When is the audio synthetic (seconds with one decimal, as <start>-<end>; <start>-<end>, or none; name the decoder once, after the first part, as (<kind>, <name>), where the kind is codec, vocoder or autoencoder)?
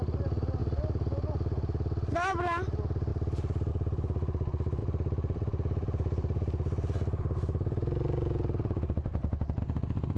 3.1-3.7 (vocoder, BigVGAN v2); 4.8-9.6